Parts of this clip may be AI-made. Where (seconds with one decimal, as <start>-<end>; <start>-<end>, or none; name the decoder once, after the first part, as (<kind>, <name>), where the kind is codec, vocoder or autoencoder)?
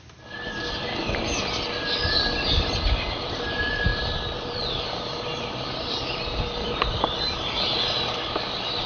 3.9-4.8 (vocoder, BigVGAN v2); 5.3-7.2